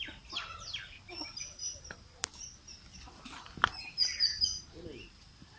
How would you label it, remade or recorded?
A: recorded